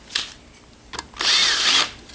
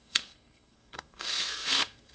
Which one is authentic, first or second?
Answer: first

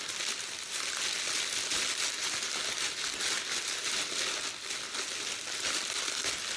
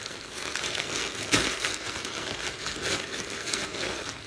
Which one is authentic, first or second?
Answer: first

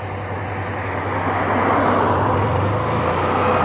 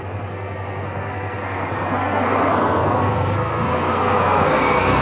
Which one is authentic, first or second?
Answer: first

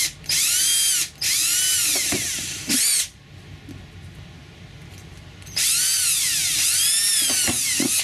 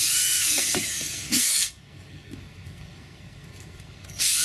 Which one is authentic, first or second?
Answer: first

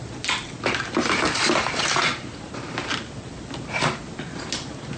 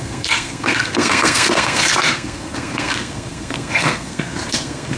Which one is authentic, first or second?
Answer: first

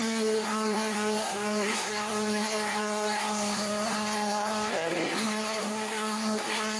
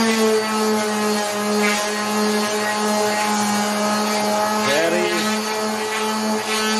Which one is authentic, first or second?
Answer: second